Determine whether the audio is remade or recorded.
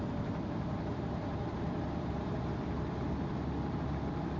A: recorded